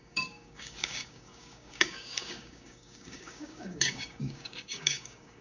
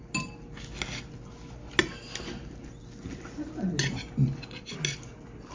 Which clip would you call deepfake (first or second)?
first